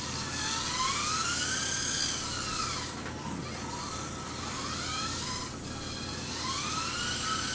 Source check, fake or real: real